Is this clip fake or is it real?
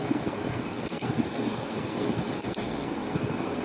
fake